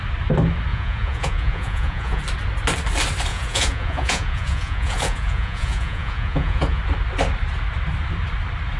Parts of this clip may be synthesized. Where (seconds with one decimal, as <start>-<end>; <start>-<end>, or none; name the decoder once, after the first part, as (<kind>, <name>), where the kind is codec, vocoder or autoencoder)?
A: 0.7-2.2 (vocoder, Vocos); 3.3-6.8